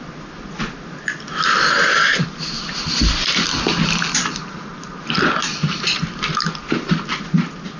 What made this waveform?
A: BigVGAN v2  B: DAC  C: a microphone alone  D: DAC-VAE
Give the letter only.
C